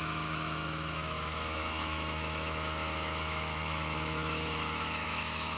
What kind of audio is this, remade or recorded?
remade